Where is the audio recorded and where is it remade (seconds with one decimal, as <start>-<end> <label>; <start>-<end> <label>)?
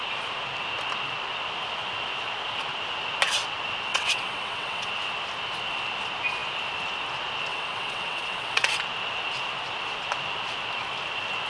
0.0-3.9 recorded; 3.9-4.9 remade; 4.9-7.5 recorded; 7.5-8.8 remade; 8.8-11.5 recorded